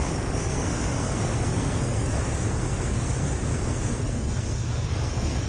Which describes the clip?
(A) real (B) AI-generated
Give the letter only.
B